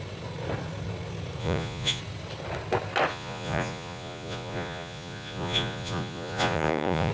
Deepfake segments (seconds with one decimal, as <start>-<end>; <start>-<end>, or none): 1.4-2.0; 3.1-7.1